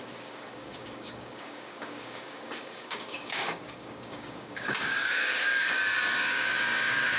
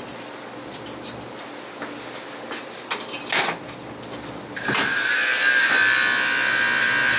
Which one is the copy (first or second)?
first